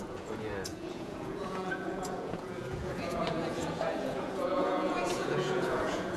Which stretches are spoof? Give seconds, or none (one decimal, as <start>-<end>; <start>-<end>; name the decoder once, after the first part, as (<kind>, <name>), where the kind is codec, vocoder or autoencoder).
0.0-6.2 (vocoder, Vocos)